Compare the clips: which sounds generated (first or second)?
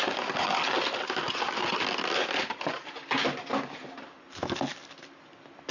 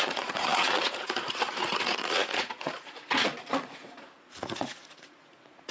second